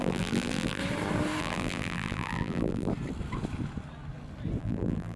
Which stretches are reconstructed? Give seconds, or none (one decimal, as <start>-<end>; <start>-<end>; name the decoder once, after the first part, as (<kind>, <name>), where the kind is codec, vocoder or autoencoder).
0.0-0.8 (vocoder, BigVGAN v2); 1.4-2.9; 4.6-5.2